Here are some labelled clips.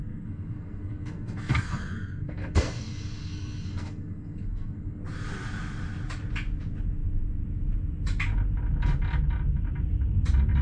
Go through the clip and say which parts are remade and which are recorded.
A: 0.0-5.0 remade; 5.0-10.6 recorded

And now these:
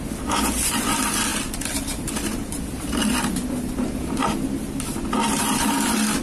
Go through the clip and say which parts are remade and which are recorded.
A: 0.0-6.2 recorded

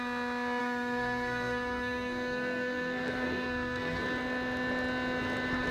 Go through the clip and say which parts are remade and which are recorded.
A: 0.0-0.6 recorded; 0.6-4.0 remade; 4.0-5.7 recorded

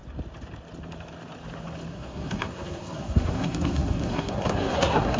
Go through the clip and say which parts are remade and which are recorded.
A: 0.0-1.9 recorded; 1.9-5.2 remade

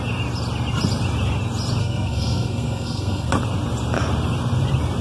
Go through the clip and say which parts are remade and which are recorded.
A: 0.0-1.8 recorded; 1.8-3.3 remade; 3.3-5.0 recorded